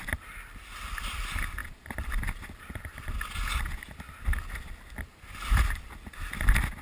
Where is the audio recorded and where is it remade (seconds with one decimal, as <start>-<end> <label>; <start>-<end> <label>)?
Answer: 0.0-6.8 recorded